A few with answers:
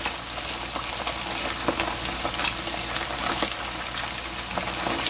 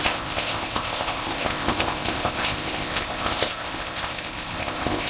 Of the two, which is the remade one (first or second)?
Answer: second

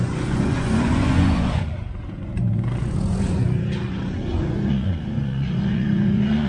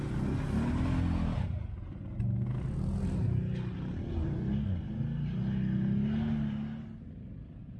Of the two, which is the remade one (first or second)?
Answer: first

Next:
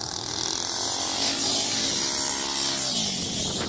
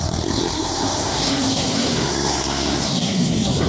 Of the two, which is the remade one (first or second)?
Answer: second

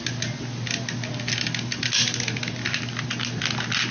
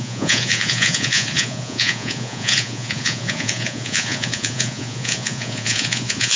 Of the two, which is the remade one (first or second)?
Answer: second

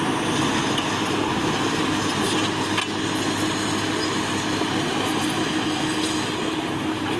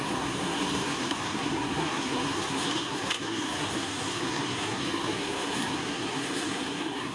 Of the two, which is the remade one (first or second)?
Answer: second